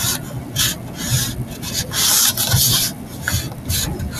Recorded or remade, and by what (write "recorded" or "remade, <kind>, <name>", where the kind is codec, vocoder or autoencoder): recorded